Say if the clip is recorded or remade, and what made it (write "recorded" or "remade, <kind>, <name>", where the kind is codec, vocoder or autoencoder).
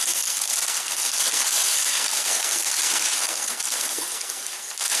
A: remade, codec, SNAC